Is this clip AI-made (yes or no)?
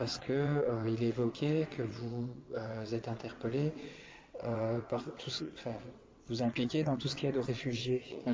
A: yes